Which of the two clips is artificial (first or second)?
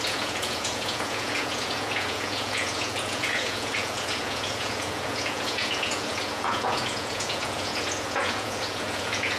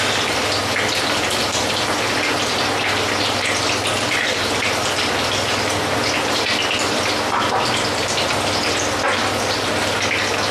first